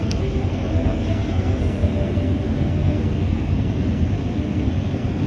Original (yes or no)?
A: no